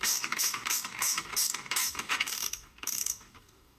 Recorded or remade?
remade